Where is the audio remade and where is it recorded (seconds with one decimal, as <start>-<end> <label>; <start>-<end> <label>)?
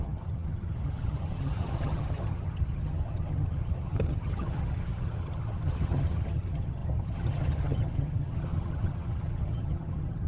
0.0-10.3 remade